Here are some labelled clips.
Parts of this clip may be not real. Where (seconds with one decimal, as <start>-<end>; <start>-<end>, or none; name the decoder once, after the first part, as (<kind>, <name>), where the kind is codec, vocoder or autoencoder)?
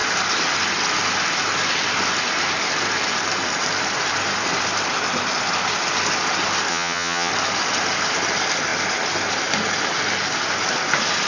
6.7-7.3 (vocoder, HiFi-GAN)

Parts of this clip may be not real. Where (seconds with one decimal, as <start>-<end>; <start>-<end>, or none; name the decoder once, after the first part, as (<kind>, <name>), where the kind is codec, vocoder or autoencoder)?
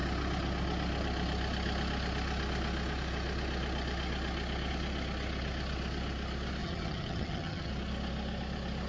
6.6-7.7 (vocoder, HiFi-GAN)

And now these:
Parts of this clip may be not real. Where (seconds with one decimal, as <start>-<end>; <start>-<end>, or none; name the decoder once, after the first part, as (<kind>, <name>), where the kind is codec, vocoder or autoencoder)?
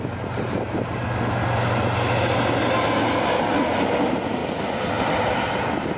none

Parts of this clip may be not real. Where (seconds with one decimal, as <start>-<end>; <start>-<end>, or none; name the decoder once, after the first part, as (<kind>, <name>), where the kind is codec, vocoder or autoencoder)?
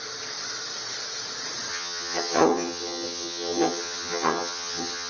1.7-5.1 (vocoder, HiFi-GAN)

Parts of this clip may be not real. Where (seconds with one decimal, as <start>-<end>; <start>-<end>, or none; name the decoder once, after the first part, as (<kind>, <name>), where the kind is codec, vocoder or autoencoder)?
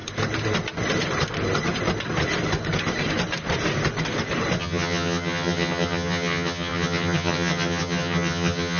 4.6-8.8 (vocoder, HiFi-GAN)